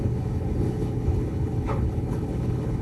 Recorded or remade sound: remade